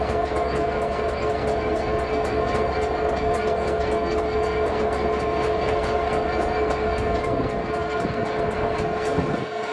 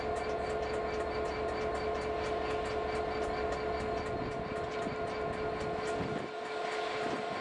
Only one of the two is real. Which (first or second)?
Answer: second